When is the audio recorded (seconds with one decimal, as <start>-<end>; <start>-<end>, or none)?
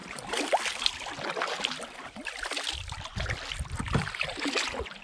0.0-5.0